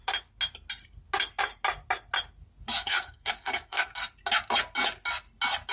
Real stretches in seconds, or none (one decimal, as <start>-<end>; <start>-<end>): 0.0-2.8; 3.9-5.7